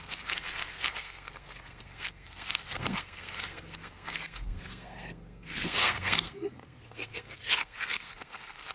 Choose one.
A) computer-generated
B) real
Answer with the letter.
A